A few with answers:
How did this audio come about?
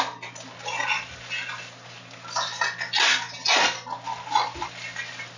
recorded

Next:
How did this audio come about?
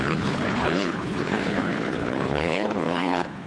remade